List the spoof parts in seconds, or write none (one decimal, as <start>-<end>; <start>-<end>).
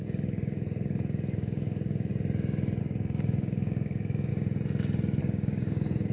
0.0-2.1; 2.8-4.3; 5.2-6.1